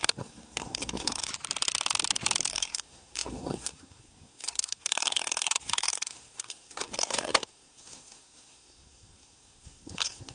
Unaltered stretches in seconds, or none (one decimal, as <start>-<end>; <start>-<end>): 1.3-2.5